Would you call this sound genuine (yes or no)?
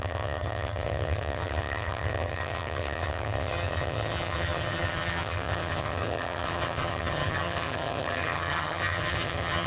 no